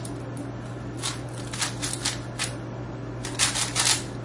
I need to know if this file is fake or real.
fake